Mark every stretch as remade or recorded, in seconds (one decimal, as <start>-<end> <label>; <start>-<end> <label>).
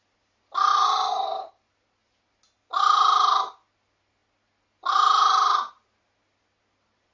0.0-7.1 recorded